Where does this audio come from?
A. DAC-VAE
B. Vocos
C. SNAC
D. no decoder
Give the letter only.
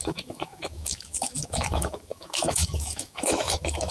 A